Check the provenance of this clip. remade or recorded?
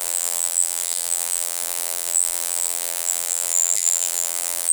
remade